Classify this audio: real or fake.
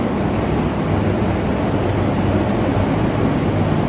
real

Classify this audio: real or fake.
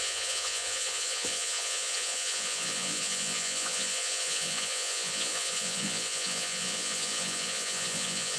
fake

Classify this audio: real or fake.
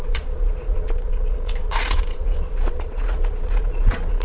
fake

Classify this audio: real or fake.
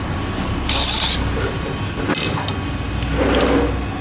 real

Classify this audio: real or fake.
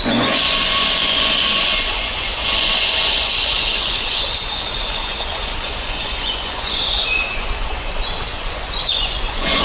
fake